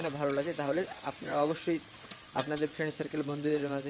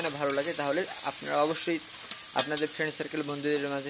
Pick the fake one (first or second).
first